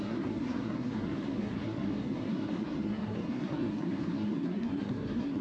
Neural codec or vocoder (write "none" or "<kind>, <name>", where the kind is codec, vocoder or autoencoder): codec, SNAC